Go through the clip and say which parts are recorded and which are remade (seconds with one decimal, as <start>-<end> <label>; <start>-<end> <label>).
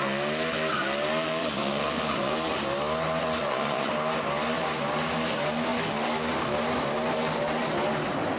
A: 0.0-1.4 recorded; 1.4-2.3 remade; 2.3-3.4 recorded; 3.4-3.9 remade; 3.9-8.4 recorded